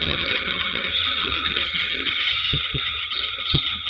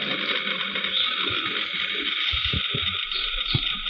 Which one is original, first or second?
second